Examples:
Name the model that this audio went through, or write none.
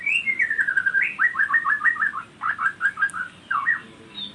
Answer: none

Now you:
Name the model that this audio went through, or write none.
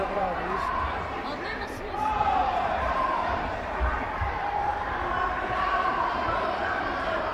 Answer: vocoder, BigVGAN v2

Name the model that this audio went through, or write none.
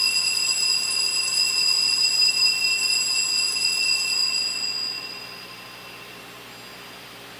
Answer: none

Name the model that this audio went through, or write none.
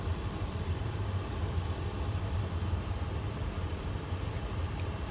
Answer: vocoder, BigVGAN v2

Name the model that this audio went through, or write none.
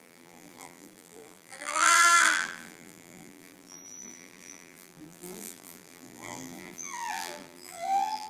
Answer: vocoder, BigVGAN v2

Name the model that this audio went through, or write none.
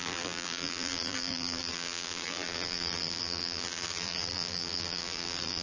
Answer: vocoder, BigVGAN v2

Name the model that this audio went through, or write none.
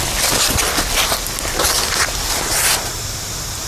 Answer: none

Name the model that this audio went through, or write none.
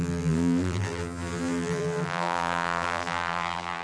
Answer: vocoder, BigVGAN v2